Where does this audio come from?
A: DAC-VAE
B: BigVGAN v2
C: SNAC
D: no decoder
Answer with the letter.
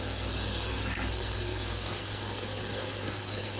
C